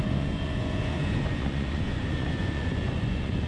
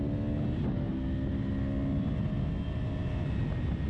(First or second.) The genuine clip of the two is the second